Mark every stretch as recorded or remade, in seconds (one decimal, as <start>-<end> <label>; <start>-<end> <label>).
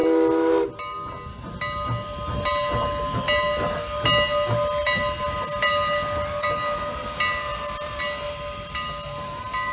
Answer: 0.0-7.5 recorded; 7.5-8.0 remade; 8.0-9.7 recorded